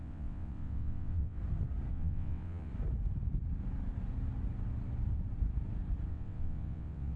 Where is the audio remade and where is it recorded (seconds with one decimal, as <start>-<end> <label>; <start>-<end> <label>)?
0.0-1.4 remade; 1.4-1.9 recorded; 1.9-2.7 remade; 2.7-6.1 recorded; 6.1-7.2 remade